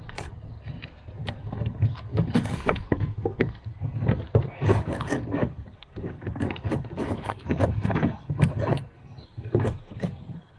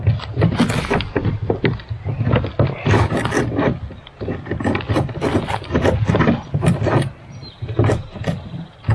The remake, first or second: first